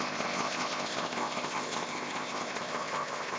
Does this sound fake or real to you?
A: fake